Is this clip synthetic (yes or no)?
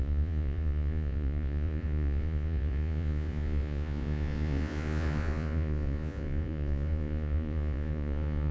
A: yes